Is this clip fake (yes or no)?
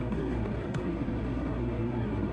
yes